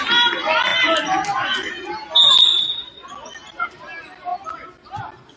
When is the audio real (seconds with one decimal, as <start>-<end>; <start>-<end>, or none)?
0.0-2.5; 3.1-5.4